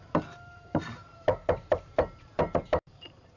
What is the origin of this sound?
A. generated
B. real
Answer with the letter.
A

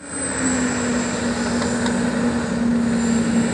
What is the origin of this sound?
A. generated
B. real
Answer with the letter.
B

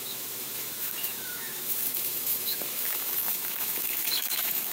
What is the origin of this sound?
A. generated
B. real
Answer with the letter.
A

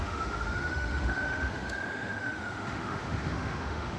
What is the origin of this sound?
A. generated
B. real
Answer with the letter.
A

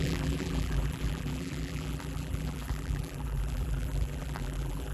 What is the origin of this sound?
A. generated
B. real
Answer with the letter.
A